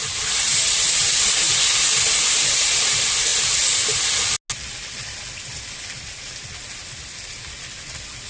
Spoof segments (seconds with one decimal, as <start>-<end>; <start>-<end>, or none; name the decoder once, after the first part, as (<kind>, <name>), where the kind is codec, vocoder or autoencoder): none